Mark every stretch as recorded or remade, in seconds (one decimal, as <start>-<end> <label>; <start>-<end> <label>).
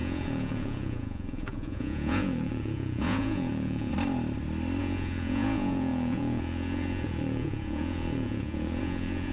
0.0-3.9 remade; 3.9-4.8 recorded; 4.8-9.3 remade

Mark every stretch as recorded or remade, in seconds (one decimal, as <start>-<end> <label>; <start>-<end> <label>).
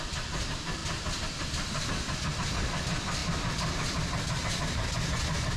0.0-5.6 recorded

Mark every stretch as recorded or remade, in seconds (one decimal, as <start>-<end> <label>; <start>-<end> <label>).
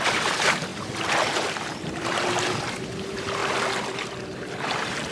0.0-0.7 remade; 0.7-1.3 recorded; 1.3-3.4 remade; 3.4-4.1 recorded; 4.1-5.1 remade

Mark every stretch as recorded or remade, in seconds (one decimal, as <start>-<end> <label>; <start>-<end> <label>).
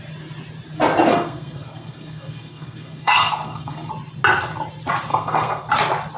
0.0-1.1 recorded; 1.1-3.9 remade; 3.9-5.1 recorded; 5.1-5.7 remade; 5.7-6.2 recorded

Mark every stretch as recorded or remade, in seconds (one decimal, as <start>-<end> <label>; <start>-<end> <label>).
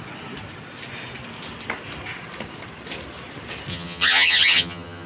0.0-3.7 recorded; 3.7-5.1 remade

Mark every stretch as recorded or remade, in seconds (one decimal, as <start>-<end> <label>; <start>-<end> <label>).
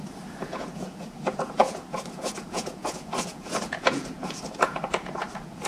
0.0-5.7 remade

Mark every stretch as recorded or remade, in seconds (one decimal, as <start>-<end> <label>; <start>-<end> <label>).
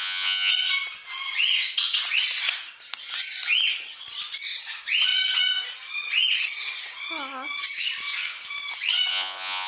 0.0-0.5 remade; 0.5-9.1 recorded; 9.1-9.7 remade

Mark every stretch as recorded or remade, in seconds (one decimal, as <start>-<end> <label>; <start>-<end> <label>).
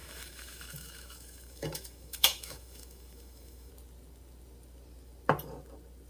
0.0-3.7 remade; 3.7-6.1 recorded